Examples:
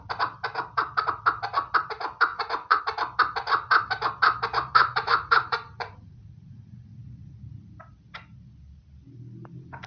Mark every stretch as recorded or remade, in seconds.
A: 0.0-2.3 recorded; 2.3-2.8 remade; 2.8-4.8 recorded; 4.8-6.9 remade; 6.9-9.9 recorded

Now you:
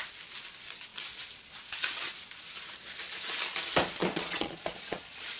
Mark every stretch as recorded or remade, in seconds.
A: 0.0-4.0 recorded; 4.0-5.4 remade

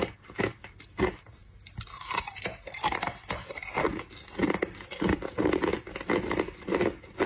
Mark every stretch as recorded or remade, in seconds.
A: 0.0-7.3 recorded